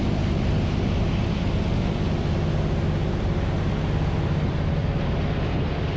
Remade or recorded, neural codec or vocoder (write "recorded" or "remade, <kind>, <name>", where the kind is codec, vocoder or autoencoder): recorded